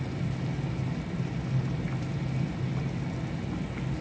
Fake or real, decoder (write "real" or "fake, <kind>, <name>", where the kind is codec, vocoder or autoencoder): real